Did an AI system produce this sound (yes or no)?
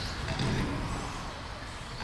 no